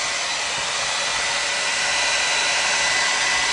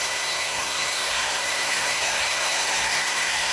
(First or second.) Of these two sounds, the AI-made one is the second